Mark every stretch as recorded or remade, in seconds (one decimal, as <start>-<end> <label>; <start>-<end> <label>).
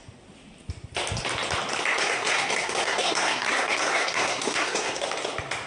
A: 0.0-2.0 recorded; 2.0-5.1 remade; 5.1-5.7 recorded